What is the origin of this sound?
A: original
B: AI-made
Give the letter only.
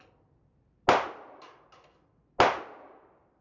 A